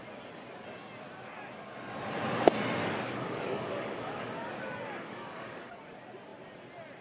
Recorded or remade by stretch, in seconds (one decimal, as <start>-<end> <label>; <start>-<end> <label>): 0.0-2.8 recorded; 2.8-5.8 remade; 5.8-7.0 recorded